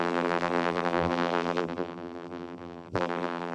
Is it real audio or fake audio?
fake